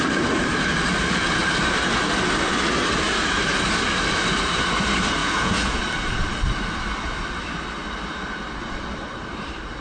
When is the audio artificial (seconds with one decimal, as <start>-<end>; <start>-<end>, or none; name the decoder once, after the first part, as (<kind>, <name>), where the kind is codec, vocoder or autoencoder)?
5.2-5.8 (vocoder, Vocos)

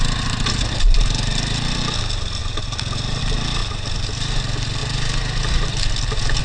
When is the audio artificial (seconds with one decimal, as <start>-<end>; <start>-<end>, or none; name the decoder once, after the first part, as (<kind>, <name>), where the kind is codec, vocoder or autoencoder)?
none

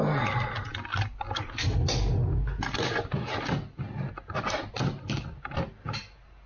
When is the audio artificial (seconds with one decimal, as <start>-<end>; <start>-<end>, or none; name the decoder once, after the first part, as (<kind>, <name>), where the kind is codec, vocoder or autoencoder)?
none

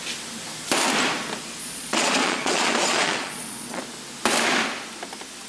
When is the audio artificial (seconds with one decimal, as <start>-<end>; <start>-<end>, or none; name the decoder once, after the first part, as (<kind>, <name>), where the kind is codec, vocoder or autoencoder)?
1.6-3.8 (vocoder, Vocos)

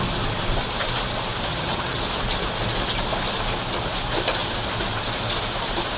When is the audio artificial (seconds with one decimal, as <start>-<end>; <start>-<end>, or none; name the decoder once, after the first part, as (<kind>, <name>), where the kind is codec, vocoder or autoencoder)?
1.5-2.0 (vocoder, HiFi-GAN)